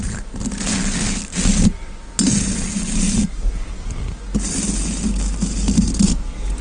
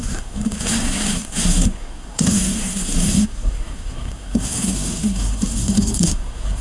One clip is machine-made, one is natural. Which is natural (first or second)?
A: first